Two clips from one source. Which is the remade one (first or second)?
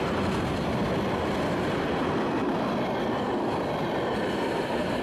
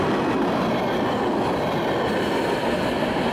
first